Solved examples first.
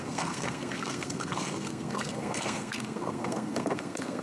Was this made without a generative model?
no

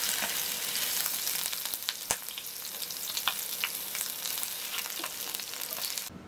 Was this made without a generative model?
yes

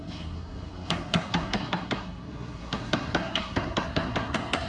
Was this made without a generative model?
no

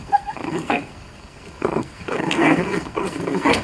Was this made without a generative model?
no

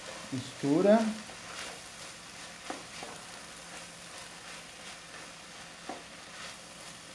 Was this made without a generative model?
yes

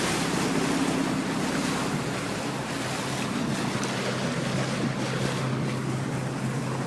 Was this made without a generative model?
yes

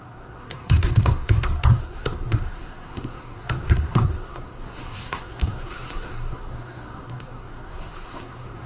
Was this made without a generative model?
no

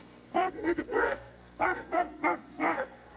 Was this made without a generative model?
no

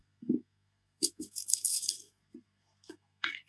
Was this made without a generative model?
no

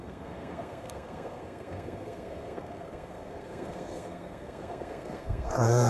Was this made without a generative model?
no